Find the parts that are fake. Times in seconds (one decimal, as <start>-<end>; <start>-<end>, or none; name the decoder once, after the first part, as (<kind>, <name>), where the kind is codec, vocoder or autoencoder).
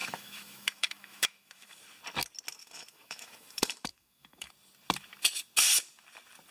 0.0-1.8 (autoencoder, DAC-VAE); 2.6-4.5